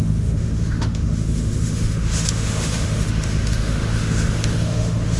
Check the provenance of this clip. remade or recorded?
remade